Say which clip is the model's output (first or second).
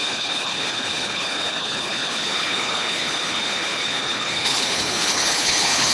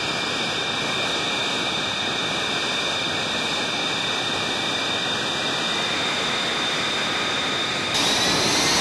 first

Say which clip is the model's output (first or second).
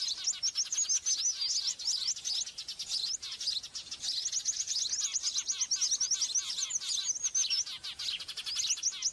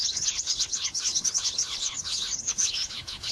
second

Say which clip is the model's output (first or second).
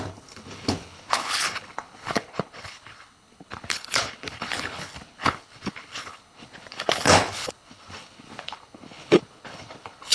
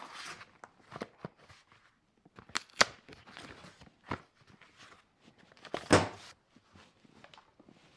first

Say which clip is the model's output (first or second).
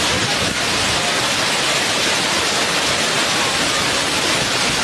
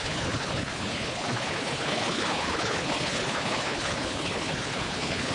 second